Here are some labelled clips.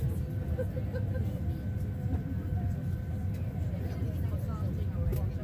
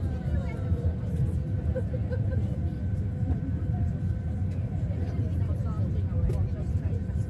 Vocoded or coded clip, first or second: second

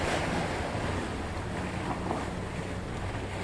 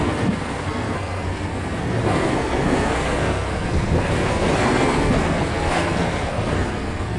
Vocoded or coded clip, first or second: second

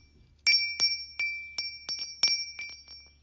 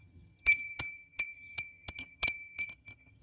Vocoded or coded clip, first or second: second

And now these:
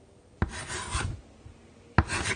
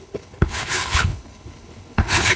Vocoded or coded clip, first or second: second